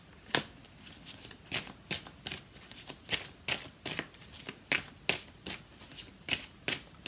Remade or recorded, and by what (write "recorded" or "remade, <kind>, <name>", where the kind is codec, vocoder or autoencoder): recorded